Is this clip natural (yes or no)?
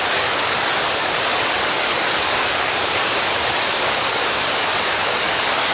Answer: no